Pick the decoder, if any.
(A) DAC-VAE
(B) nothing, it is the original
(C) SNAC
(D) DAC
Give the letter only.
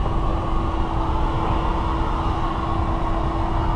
B